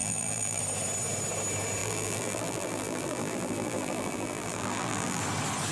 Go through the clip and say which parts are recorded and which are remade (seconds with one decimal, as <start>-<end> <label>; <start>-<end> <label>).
0.0-0.6 remade; 0.6-1.8 recorded; 1.8-5.2 remade; 5.2-5.7 recorded